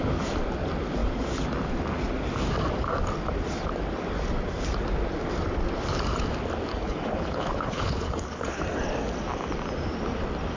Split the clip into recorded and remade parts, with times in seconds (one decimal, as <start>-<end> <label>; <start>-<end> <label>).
0.0-6.7 recorded; 6.7-8.6 remade; 8.6-10.6 recorded